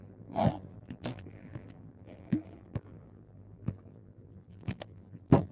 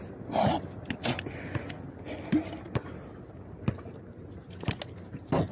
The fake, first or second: first